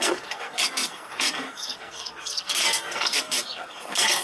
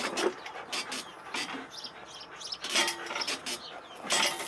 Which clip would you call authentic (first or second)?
second